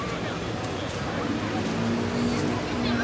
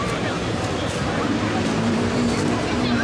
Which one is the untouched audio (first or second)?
first